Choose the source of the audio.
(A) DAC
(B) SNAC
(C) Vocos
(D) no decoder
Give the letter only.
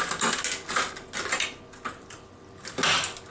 D